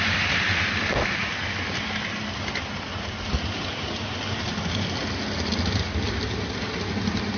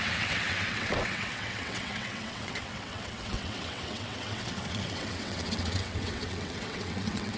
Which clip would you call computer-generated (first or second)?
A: second